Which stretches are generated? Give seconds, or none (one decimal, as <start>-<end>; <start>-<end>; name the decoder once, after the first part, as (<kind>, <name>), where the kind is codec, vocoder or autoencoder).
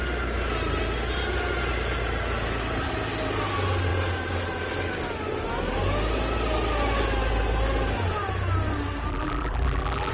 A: 9.1-10.1 (vocoder, BigVGAN v2)